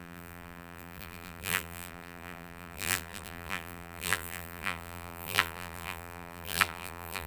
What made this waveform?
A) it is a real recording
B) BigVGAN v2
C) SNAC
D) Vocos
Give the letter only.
B